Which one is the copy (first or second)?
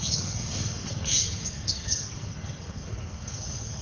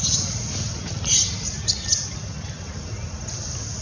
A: first